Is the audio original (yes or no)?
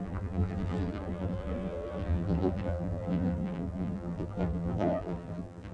no